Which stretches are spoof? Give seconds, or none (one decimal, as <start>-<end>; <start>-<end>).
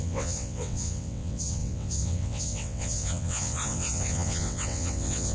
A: 0.0-5.3